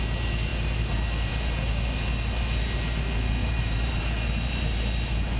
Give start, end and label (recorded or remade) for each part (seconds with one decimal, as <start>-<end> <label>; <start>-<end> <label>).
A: 0.0-3.4 recorded; 3.4-4.0 remade; 4.0-5.4 recorded